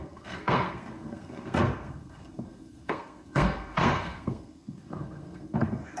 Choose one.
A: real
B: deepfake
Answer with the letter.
B